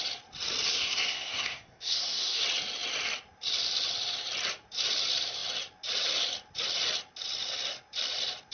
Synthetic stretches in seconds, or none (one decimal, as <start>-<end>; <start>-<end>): 0.7-2.4